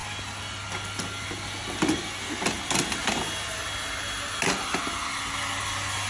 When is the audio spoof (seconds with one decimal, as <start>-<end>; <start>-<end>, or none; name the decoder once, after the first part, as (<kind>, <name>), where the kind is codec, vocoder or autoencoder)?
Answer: none